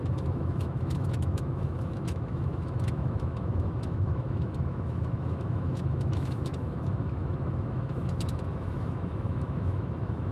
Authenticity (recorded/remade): remade